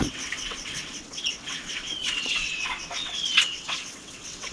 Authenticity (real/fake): fake